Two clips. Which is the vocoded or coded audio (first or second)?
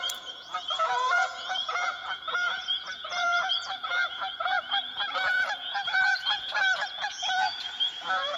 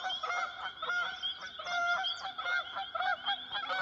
first